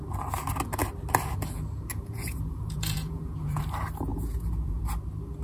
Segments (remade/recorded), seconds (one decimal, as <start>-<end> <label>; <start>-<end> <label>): 0.0-1.9 recorded; 1.9-3.6 remade; 3.6-4.1 recorded; 4.1-4.8 remade; 4.8-5.4 recorded